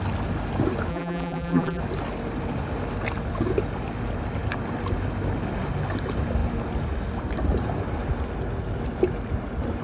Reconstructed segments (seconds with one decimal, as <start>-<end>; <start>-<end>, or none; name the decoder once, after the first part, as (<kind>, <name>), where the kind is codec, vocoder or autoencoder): 0.9-1.8 (vocoder, BigVGAN v2)